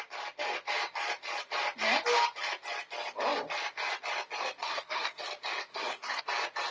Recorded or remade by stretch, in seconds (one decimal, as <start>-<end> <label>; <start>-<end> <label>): 0.0-4.6 recorded; 4.6-5.2 remade; 5.2-5.7 recorded; 5.7-6.2 remade; 6.2-6.7 recorded

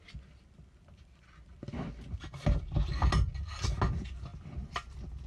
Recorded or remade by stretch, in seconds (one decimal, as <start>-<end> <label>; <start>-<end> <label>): 0.0-5.3 recorded

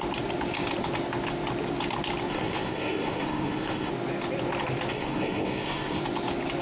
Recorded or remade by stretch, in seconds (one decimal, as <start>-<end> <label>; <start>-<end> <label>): 0.0-2.3 recorded; 2.3-3.9 remade; 3.9-4.9 recorded; 4.9-6.0 remade; 6.0-6.6 recorded

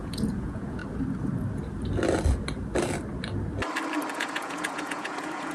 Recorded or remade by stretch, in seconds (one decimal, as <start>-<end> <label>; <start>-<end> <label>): 0.0-0.8 remade; 0.8-4.1 recorded; 4.1-5.5 remade

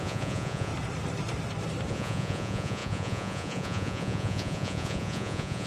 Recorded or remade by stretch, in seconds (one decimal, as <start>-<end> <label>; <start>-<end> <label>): 0.0-0.7 remade; 0.7-1.9 recorded; 1.9-5.7 remade

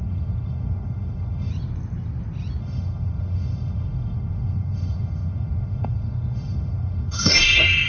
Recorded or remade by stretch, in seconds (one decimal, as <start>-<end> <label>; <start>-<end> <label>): 0.0-1.5 remade; 1.5-2.6 recorded; 2.6-7.9 remade

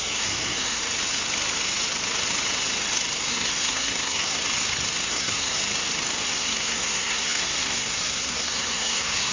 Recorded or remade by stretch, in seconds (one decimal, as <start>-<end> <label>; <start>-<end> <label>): 0.0-0.8 remade; 0.8-3.3 recorded; 3.3-4.4 remade; 4.4-5.1 recorded; 5.1-5.6 remade; 5.6-6.2 recorded; 6.2-9.3 remade